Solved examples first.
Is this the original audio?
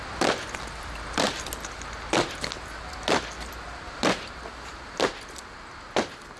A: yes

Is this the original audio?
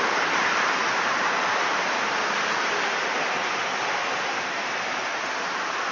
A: yes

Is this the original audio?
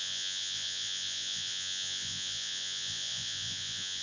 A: no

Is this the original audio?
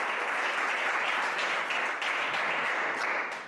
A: yes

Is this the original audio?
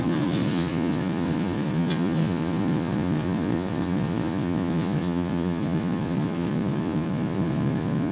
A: no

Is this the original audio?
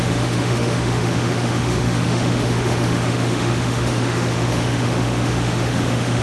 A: no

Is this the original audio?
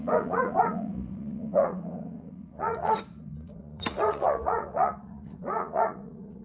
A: no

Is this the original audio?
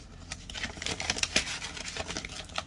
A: yes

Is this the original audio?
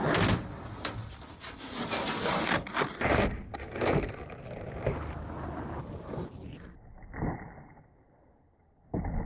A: yes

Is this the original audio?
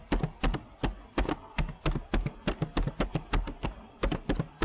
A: yes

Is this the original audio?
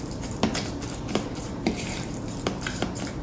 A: no